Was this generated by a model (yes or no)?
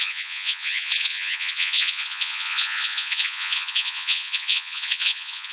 yes